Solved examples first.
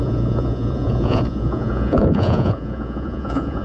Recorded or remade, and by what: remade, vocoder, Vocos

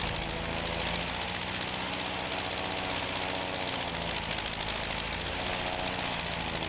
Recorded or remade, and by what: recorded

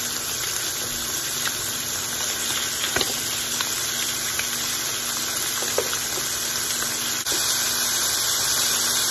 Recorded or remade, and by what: recorded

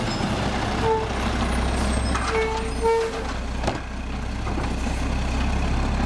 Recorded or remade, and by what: recorded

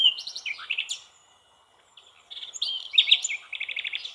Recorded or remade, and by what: recorded